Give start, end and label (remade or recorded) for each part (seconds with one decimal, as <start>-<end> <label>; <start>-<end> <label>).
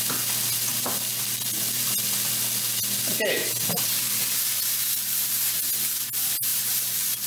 0.0-3.4 recorded; 3.4-5.5 remade; 5.5-6.5 recorded; 6.5-7.3 remade